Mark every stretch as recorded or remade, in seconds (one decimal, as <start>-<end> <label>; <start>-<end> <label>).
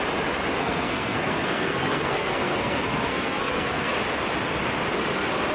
0.0-0.6 recorded; 0.6-3.9 remade; 3.9-5.5 recorded